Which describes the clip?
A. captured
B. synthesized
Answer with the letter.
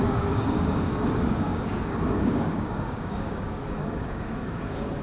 B